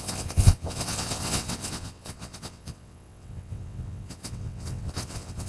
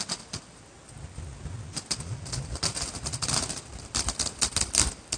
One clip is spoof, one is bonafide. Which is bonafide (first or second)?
second